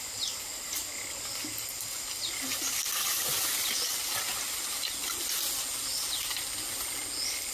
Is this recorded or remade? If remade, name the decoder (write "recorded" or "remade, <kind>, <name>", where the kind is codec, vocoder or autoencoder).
recorded